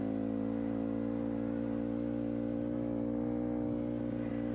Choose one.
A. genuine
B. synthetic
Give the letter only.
A